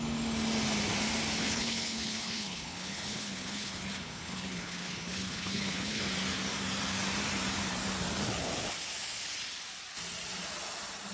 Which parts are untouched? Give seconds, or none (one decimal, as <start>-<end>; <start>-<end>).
0.0-1.4; 6.0-11.1